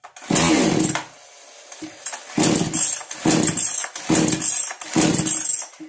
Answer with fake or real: real